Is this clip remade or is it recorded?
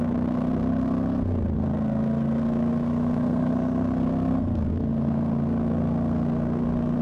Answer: remade